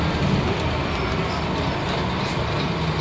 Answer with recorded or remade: recorded